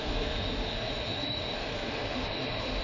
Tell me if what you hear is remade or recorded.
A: remade